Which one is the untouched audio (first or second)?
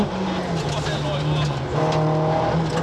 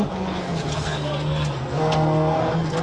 first